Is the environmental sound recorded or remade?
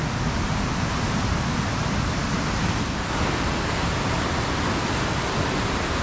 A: recorded